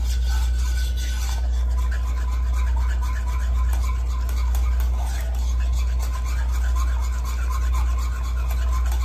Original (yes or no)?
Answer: yes